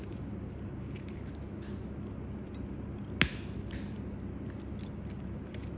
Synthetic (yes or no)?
no